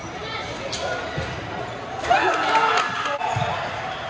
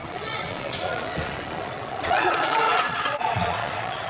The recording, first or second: first